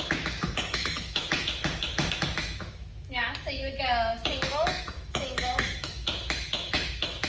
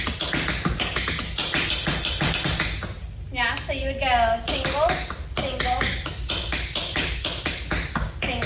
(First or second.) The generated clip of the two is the first